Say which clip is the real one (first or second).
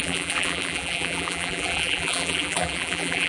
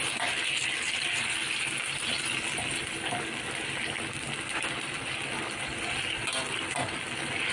second